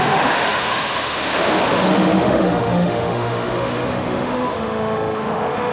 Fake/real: fake